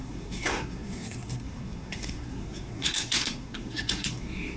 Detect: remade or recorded remade